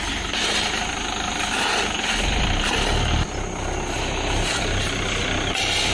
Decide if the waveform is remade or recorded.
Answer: recorded